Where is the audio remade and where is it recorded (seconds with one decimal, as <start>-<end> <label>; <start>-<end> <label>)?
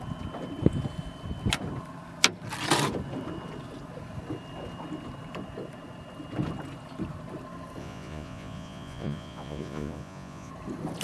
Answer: 0.0-7.8 recorded; 7.8-10.5 remade; 10.5-11.0 recorded